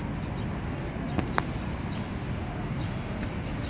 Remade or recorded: recorded